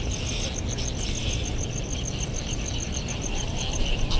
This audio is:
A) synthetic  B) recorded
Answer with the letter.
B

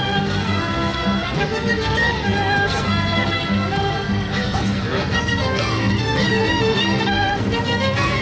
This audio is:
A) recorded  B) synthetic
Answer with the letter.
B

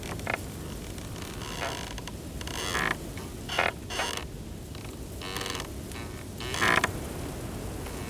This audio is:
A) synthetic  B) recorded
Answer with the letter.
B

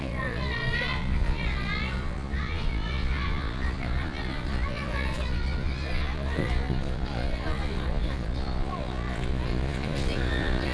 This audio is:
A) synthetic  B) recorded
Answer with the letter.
A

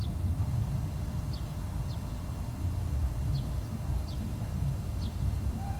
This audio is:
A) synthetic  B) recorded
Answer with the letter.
B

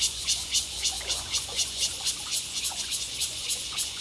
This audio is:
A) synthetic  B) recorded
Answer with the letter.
A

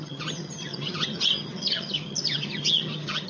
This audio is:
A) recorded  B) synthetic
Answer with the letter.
B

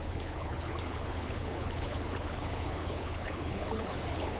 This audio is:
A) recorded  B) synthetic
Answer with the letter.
B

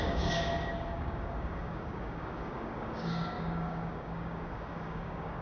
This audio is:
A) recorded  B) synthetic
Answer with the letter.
B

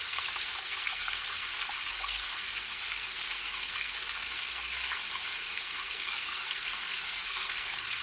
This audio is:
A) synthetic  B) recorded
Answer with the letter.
A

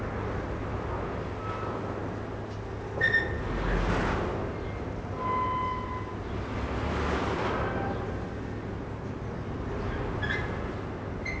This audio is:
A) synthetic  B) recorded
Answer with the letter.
B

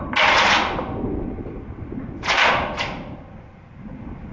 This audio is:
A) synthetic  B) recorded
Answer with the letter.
B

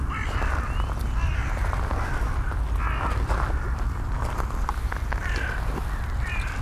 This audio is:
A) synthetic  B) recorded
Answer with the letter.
B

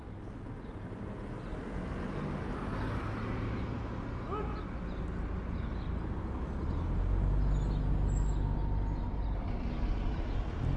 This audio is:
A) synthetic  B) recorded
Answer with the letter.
B